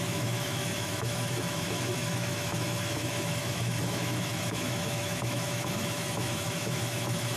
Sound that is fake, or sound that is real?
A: fake